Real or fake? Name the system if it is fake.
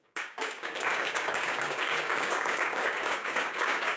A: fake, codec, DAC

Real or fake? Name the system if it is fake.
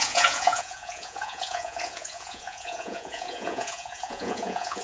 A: fake, vocoder, Vocos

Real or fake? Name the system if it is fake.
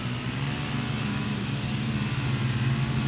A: real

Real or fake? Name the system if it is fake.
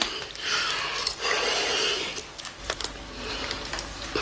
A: real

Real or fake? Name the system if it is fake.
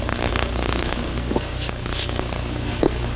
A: fake, codec, SNAC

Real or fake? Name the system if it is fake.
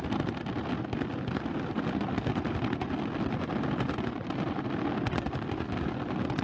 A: real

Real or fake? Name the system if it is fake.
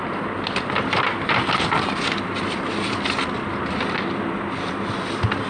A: real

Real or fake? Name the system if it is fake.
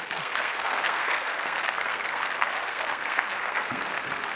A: fake, codec, SNAC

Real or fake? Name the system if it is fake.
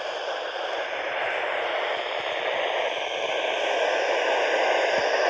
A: real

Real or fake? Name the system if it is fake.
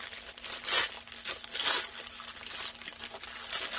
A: real